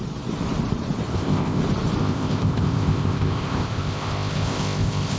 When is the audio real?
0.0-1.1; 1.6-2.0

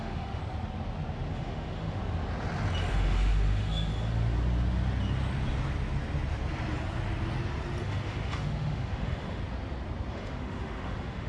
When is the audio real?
0.4-1.3; 2.0-2.9; 3.9-7.8; 9.4-10.1

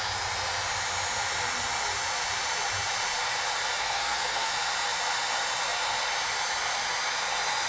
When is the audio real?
0.0-3.8; 4.5-7.7

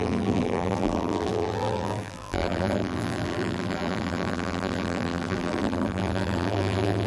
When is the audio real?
none

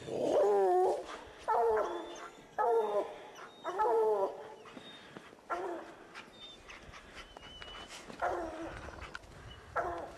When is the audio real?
0.0-2.2; 2.9-10.2

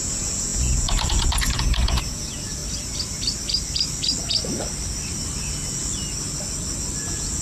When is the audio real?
2.6-7.0